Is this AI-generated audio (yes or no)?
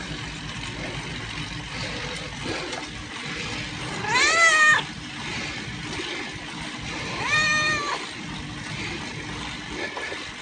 no